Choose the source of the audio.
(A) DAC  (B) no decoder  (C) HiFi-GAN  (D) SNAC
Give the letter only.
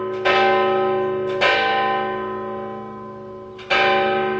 B